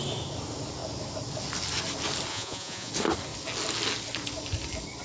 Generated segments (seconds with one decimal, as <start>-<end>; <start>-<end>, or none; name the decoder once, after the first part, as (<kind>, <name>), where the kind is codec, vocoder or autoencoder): 2.3-2.9 (vocoder, Vocos)